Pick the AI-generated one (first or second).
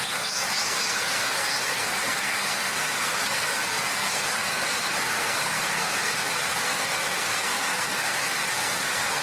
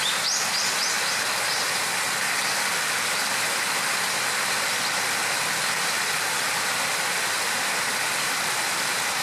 first